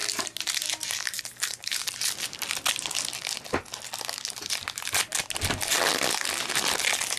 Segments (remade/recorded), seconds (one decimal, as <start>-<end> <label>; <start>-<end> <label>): 0.0-2.5 remade; 2.5-7.2 recorded